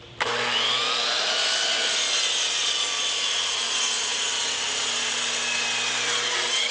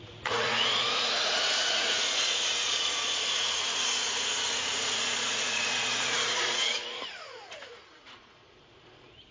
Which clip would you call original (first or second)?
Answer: first